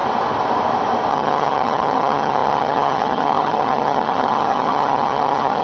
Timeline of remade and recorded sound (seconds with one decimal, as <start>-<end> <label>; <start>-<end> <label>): 0.0-1.1 recorded; 1.1-5.6 remade